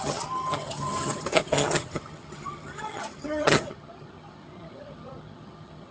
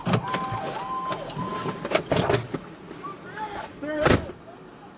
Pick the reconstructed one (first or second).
first